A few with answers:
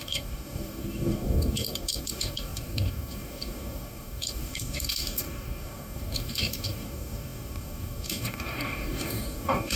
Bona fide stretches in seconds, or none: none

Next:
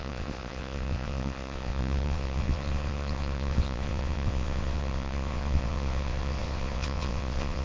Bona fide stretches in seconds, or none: none

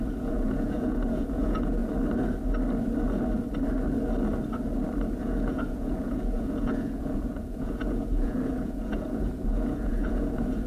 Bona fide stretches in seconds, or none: 1.8-5.2

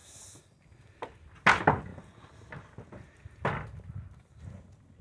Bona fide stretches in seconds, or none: 0.0-5.0

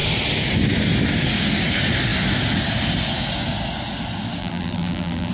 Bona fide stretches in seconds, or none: 0.0-4.4

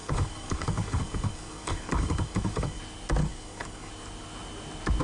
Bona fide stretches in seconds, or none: 2.8-3.2; 3.9-5.0

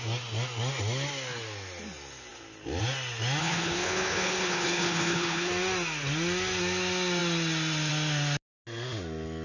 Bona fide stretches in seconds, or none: 0.0-3.4; 5.5-9.4